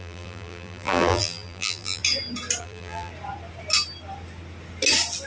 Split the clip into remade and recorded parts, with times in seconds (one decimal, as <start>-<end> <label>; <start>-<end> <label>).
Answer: 0.0-2.0 remade; 2.0-2.6 recorded; 2.6-3.1 remade; 3.1-5.3 recorded